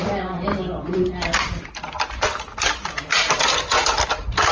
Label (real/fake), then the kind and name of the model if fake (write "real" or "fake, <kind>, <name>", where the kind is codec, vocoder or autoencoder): real